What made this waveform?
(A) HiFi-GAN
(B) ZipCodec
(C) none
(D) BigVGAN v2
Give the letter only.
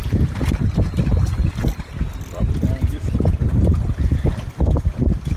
C